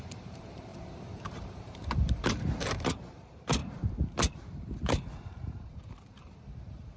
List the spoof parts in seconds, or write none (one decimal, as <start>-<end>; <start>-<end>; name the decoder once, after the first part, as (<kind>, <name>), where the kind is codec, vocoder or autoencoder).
0.0-7.0 (vocoder, BigVGAN v2)